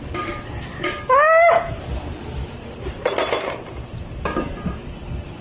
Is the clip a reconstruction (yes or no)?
no